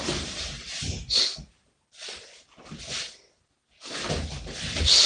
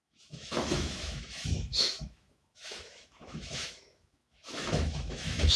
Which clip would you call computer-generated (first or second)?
second